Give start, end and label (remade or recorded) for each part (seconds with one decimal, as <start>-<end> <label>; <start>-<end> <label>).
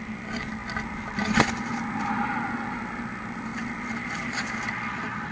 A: 0.0-5.3 recorded